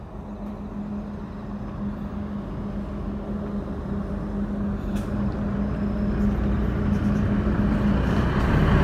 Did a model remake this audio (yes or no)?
no